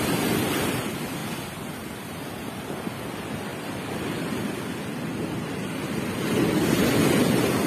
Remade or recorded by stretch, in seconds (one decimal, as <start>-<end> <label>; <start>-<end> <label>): 0.0-1.2 recorded; 1.2-2.6 remade; 2.6-7.7 recorded